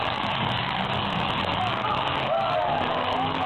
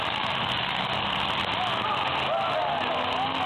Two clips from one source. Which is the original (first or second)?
second